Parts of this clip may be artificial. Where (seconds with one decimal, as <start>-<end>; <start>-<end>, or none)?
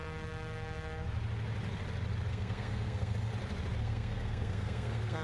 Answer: 2.3-3.3; 3.8-5.2